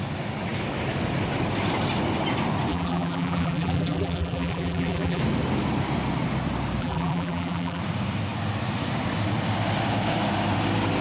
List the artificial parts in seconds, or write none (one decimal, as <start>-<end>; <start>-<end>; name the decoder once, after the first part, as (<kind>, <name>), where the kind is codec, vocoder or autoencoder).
2.7-5.2 (vocoder, BigVGAN v2); 6.8-7.8